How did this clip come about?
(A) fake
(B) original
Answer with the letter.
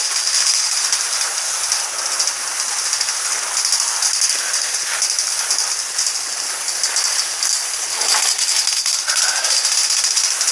B